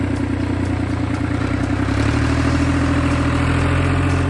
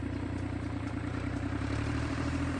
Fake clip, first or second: second